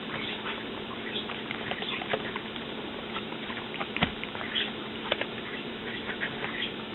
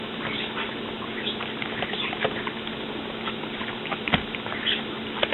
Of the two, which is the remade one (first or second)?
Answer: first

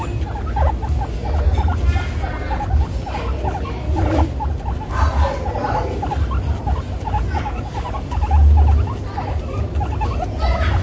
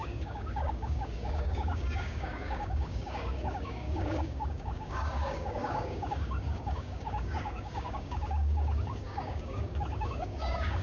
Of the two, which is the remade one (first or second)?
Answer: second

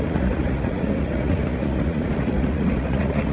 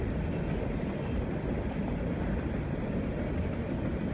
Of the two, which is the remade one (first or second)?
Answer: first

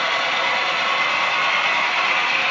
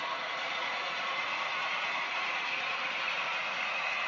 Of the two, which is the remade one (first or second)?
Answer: second